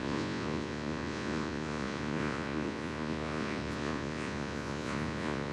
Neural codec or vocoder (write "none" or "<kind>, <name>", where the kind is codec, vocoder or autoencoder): vocoder, Vocos